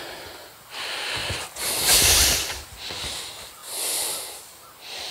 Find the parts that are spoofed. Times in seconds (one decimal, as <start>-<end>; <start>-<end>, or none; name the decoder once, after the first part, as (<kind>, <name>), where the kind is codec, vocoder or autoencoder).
none